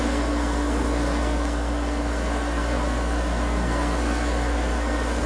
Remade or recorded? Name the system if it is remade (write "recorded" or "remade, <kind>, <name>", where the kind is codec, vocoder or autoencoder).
remade, codec, SNAC